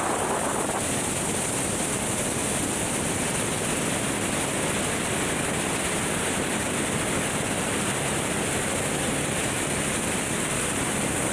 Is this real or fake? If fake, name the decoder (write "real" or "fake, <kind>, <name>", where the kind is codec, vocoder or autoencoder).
real